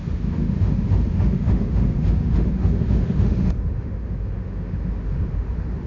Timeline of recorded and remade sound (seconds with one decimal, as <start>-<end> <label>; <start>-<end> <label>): 0.0-5.9 remade